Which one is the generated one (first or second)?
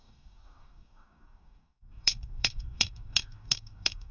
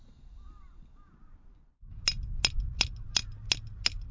first